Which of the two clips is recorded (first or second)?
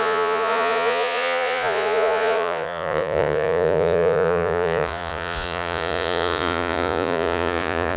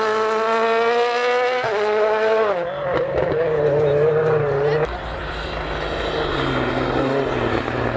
second